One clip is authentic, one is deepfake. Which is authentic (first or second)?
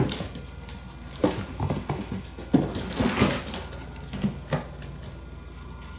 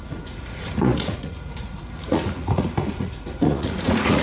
first